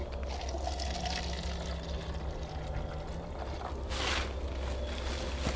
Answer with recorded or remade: recorded